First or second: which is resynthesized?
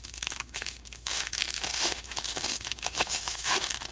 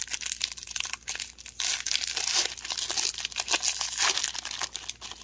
first